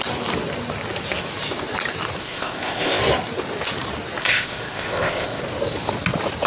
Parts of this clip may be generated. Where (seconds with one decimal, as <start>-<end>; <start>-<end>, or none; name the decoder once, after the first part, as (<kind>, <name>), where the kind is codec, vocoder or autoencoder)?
2.2-3.0 (codec, ZipCodec); 4.2-5.4